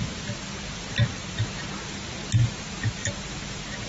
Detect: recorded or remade recorded